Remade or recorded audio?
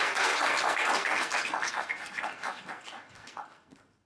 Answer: remade